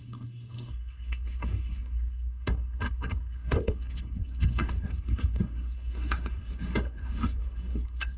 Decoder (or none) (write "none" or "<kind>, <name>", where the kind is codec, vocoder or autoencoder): codec, SNAC